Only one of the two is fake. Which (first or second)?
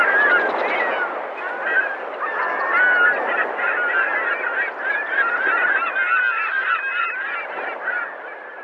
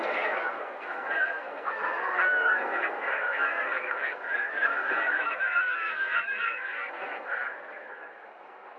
second